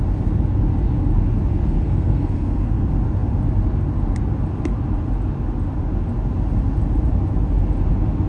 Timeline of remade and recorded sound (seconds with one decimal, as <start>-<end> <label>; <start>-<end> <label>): 0.0-1.5 recorded; 1.5-2.8 remade; 2.8-8.3 recorded